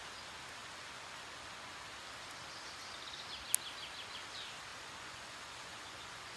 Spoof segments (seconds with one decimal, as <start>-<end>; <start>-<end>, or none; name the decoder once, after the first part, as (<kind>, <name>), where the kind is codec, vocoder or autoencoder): 0.6-1.8 (vocoder, Vocos); 4.7-6.4